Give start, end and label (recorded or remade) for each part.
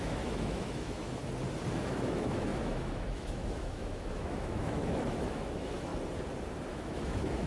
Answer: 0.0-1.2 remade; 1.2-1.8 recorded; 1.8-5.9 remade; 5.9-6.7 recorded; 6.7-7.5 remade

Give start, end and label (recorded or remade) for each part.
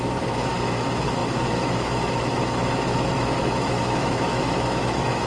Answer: 0.0-5.3 remade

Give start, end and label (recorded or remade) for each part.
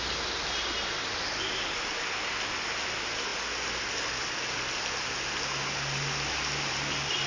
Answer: 0.0-7.3 recorded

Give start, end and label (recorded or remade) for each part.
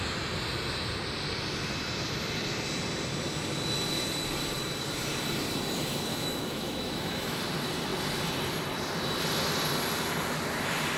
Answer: 0.0-6.1 recorded; 6.1-7.4 remade; 7.4-11.0 recorded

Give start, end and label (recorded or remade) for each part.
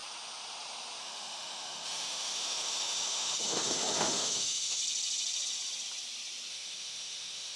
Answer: 0.0-1.0 recorded; 1.0-4.8 remade; 4.8-6.5 recorded; 6.5-7.6 remade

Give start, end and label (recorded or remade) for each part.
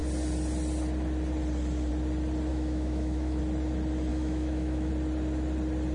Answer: 0.0-2.5 recorded; 2.5-3.4 remade; 3.4-4.1 recorded; 4.1-4.9 remade; 4.9-5.9 recorded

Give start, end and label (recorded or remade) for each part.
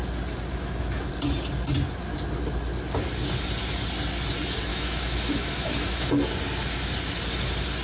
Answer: 0.0-0.5 recorded; 0.5-1.1 remade; 1.1-4.7 recorded; 4.7-6.1 remade; 6.1-7.8 recorded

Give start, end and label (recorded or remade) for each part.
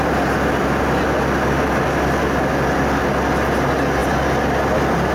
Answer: 0.0-5.1 recorded